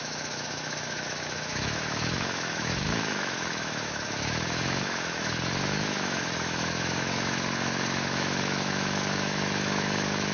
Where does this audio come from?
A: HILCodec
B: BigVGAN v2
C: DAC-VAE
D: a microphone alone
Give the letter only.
C